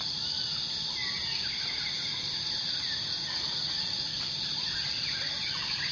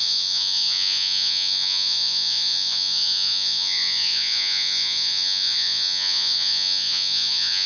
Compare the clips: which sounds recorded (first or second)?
first